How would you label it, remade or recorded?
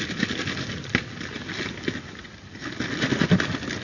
recorded